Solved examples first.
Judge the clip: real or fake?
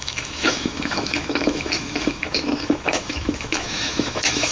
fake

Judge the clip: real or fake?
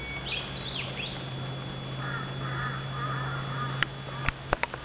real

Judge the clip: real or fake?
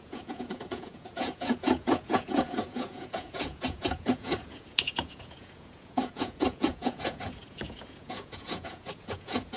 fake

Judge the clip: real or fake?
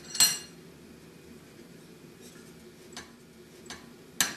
real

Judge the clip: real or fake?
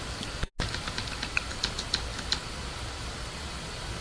real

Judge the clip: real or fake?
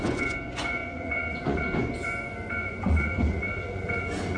fake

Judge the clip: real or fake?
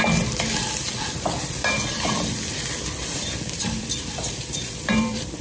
fake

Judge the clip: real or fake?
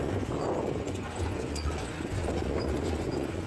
fake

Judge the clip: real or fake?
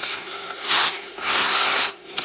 fake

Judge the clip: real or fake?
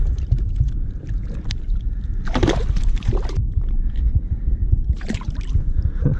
fake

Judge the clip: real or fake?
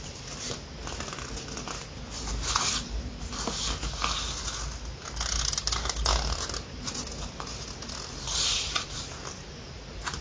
real